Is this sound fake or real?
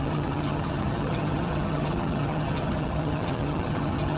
fake